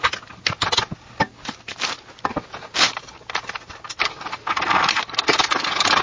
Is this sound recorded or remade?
recorded